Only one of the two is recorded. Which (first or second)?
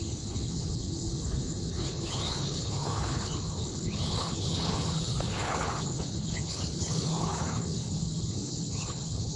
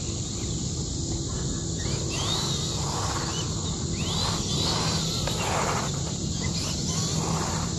second